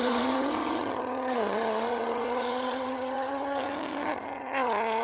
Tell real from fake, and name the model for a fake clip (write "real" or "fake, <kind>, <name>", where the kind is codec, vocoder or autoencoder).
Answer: fake, vocoder, HiFi-GAN